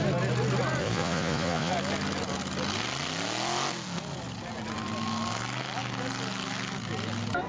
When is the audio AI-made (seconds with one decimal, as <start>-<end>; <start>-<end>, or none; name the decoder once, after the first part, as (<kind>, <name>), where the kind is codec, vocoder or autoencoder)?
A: 0.8-1.7 (vocoder, Vocos)